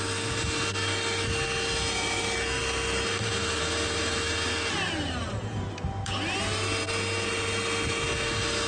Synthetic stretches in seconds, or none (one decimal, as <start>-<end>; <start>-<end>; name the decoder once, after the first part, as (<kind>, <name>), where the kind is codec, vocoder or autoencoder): none